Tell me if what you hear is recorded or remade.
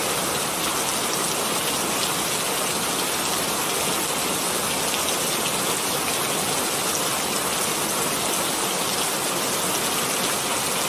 recorded